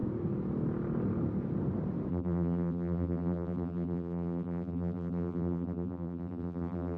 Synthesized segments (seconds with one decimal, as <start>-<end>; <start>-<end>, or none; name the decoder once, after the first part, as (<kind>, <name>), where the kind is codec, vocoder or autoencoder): 2.1-7.0 (vocoder, BigVGAN v2)